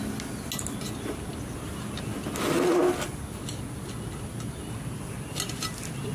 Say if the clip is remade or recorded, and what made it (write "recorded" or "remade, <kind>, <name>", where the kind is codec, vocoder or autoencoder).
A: recorded